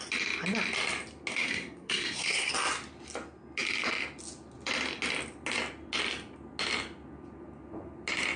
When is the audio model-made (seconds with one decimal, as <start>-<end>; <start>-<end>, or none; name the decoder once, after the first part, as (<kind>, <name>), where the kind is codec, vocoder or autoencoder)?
1.3-2.5 (codec, SNAC)

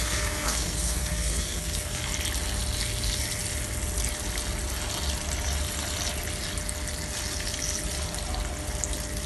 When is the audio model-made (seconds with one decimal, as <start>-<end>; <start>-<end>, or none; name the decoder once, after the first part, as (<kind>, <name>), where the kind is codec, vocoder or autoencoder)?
0.0-2.0 (codec, SNAC)

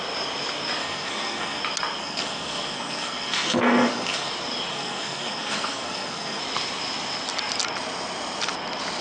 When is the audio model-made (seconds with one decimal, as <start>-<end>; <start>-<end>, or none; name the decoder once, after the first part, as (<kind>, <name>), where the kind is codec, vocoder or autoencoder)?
0.8-1.6 (codec, SNAC); 2.0-4.3; 4.7-6.4

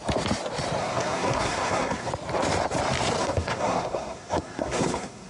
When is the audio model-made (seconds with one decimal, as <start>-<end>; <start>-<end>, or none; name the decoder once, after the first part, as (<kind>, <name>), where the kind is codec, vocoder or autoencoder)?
0.8-2.1 (codec, SNAC); 3.2-5.3

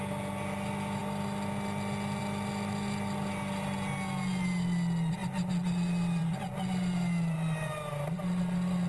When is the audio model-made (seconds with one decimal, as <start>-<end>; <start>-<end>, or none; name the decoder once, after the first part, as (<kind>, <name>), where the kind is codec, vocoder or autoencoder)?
none

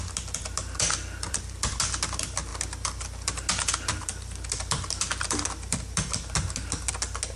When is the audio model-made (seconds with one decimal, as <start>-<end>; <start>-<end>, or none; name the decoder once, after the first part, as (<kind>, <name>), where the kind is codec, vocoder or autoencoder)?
none

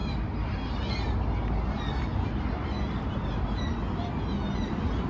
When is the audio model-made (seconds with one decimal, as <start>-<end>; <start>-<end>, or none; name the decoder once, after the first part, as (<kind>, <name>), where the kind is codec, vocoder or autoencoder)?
none

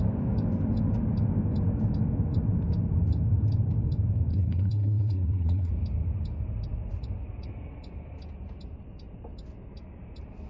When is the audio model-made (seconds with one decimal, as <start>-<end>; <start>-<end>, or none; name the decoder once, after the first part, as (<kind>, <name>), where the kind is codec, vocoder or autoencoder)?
4.3-5.7 (codec, SNAC)